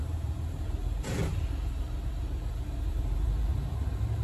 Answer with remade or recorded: remade